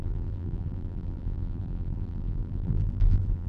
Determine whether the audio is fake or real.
fake